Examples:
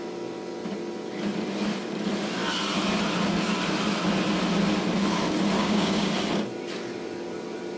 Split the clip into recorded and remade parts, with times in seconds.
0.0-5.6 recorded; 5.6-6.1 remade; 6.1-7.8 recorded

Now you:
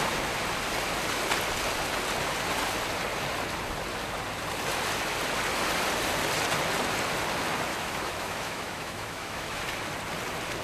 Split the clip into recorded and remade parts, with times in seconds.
0.0-7.7 recorded; 7.7-9.6 remade; 9.6-10.6 recorded

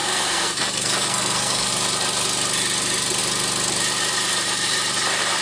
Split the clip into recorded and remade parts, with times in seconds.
0.0-1.7 remade; 1.7-5.4 recorded

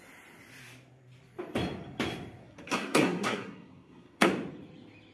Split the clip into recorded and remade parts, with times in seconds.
0.0-2.4 recorded; 2.4-4.3 remade; 4.3-5.1 recorded

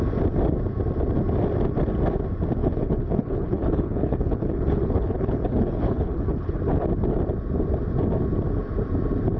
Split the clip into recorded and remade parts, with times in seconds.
0.0-2.6 recorded; 2.6-6.6 remade; 6.6-9.4 recorded